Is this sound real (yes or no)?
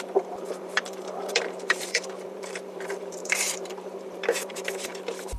no